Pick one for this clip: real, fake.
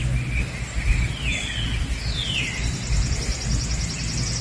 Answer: real